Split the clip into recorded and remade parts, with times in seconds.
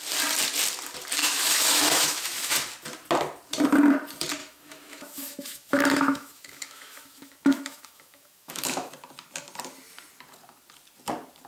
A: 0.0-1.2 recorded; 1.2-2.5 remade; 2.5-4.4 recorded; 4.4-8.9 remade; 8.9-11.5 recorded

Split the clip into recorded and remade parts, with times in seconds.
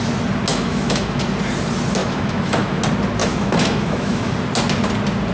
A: 0.0-0.5 recorded; 0.5-1.2 remade; 1.2-2.0 recorded; 2.0-2.8 remade; 2.8-3.2 recorded; 3.2-4.3 remade; 4.3-5.3 recorded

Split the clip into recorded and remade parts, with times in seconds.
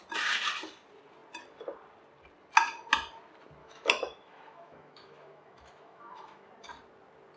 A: 0.0-3.6 recorded; 3.6-6.5 remade; 6.5-7.4 recorded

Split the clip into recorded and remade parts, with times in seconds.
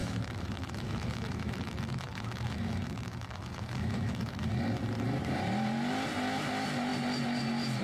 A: 0.0-4.5 remade; 4.5-7.8 recorded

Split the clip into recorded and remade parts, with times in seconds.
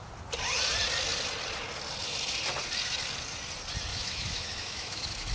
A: 0.0-3.9 recorded; 3.9-5.3 remade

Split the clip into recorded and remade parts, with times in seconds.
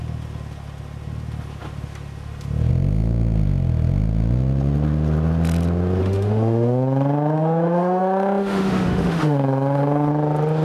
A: 0.0-6.0 recorded; 6.0-10.1 remade; 10.1-10.6 recorded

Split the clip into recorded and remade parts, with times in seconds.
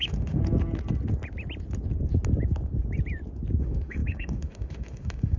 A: 0.0-0.4 remade; 0.4-3.6 recorded; 3.6-5.4 remade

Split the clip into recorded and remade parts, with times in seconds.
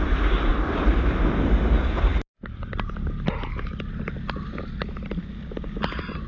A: 0.0-6.3 recorded